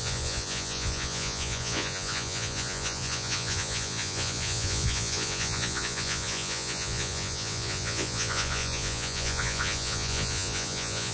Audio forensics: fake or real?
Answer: fake